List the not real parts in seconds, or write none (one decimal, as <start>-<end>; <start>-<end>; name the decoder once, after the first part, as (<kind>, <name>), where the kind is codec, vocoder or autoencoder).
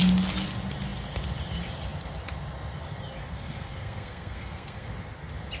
3.2-4.9 (codec, SNAC)